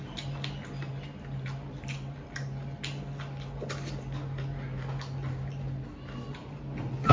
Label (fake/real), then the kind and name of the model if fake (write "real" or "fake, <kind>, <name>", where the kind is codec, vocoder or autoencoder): real